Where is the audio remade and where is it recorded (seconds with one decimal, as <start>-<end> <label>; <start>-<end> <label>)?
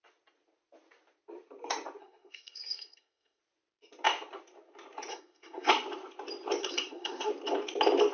0.0-2.0 recorded; 2.0-3.4 remade; 3.4-5.1 recorded; 5.1-5.7 remade; 5.7-6.6 recorded; 6.6-7.3 remade; 7.3-8.1 recorded